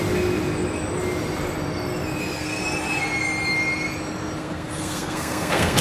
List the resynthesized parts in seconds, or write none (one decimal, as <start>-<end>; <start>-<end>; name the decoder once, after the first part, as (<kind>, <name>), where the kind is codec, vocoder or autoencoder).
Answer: 2.2-2.6 (codec, SNAC); 4.4-5.8